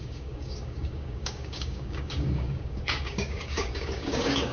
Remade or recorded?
remade